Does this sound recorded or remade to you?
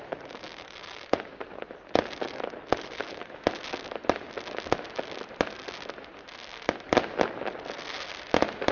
recorded